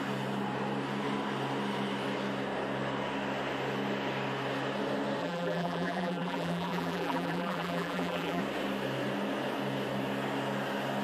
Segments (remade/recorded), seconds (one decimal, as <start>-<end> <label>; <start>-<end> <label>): 0.0-5.2 recorded; 5.2-8.4 remade; 8.4-11.0 recorded